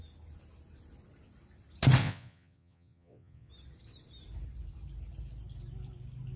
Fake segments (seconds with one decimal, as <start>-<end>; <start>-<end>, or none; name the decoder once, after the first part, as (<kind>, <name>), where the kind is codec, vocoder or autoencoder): 2.0-3.5 (vocoder, Vocos)